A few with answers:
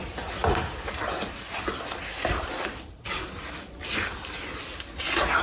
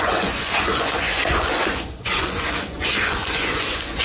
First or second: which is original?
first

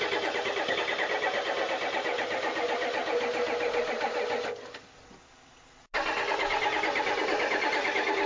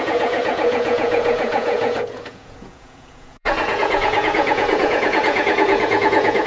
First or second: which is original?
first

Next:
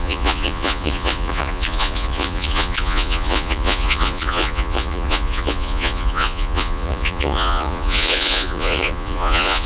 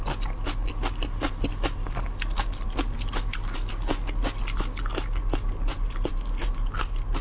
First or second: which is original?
second